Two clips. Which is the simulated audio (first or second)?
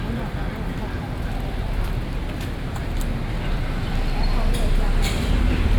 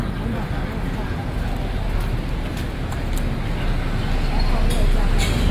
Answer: first